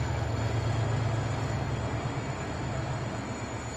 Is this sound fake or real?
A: real